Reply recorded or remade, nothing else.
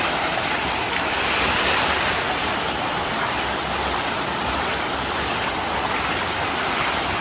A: remade